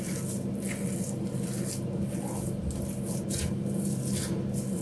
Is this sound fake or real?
real